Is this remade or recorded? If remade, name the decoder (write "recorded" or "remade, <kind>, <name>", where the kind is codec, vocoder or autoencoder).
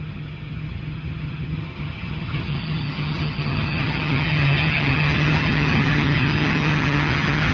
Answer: remade, vocoder, HiFi-GAN